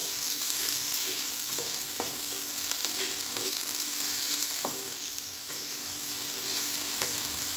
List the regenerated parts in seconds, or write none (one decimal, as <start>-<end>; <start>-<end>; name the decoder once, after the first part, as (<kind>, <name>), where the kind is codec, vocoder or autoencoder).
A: 0.0-7.6 (codec, DAC)